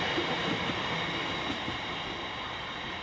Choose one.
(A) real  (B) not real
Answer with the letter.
A